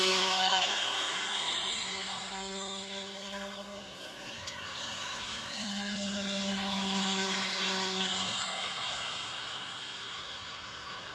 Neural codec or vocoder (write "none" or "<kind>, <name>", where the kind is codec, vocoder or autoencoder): codec, SNAC